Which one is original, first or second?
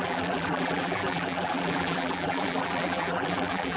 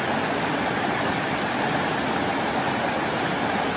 second